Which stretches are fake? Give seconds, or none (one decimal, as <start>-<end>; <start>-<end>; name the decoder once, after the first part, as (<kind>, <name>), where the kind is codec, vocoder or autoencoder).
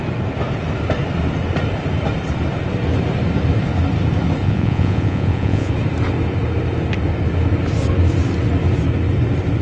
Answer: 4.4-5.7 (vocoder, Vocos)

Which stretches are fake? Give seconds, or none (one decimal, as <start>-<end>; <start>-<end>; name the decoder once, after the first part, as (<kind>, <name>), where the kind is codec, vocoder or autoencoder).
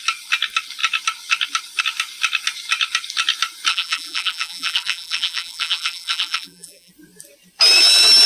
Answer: 3.7-6.9 (vocoder, BigVGAN v2)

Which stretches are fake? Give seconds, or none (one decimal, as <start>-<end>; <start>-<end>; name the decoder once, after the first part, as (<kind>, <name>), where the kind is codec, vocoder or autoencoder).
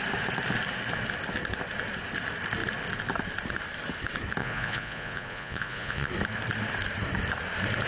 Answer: 4.4-6.1 (vocoder, Vocos)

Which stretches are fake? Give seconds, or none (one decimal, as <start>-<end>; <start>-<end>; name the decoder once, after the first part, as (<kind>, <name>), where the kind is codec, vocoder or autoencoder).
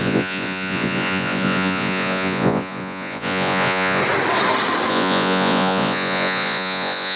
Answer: 0.0-4.0 (vocoder, Vocos); 4.9-7.2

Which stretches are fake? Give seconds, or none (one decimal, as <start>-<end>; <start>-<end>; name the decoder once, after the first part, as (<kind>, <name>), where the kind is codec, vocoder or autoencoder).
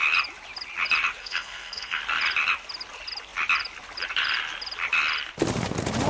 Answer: 1.2-2.0 (codec, SNAC)